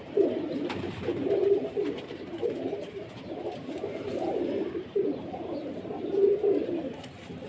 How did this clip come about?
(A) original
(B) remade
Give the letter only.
B